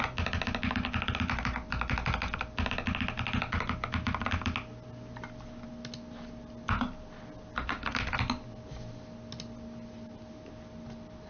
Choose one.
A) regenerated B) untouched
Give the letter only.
B